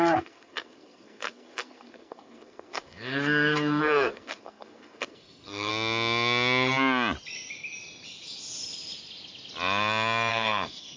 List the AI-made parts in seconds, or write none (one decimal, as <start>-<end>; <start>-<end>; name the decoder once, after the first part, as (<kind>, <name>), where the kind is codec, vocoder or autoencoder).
0.0-5.7 (codec, SNAC); 10.3-11.0